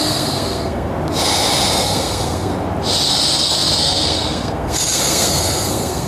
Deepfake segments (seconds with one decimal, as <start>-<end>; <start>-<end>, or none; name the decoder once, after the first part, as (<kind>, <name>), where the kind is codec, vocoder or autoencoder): 0.0-0.9 (codec, SNAC); 1.7-2.5; 3.1-6.1